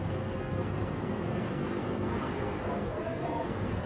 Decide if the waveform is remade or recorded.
remade